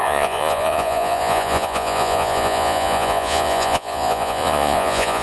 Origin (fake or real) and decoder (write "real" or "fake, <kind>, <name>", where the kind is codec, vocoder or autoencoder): fake, vocoder, Vocos